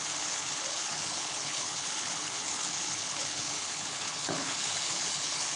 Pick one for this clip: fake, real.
fake